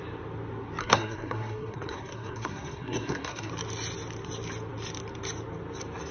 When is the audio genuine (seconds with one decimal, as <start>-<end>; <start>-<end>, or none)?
0.0-0.8; 3.5-6.1